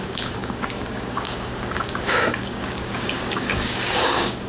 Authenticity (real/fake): fake